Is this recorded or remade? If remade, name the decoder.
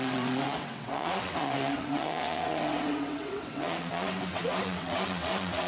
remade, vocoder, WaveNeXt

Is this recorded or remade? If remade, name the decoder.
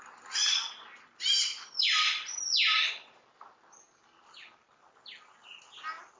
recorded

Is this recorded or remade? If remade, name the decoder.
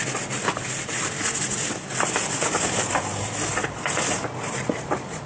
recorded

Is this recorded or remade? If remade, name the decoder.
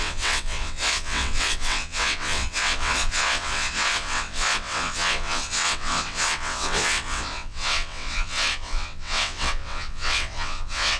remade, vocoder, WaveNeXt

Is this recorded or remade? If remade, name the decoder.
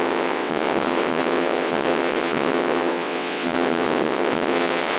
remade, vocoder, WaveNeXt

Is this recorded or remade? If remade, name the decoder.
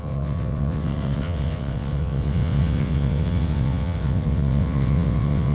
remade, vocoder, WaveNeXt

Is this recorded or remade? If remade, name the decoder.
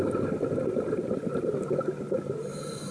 recorded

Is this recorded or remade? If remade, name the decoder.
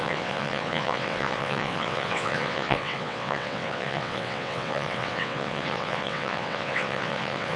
remade, vocoder, WaveNeXt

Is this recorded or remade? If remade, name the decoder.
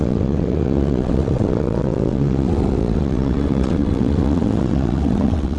remade, vocoder, WaveNeXt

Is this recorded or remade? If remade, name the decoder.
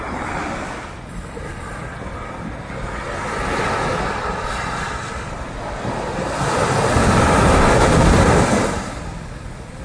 recorded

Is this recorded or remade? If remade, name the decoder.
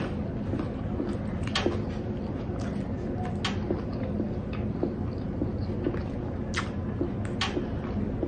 recorded